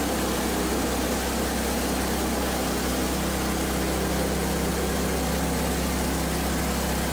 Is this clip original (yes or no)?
yes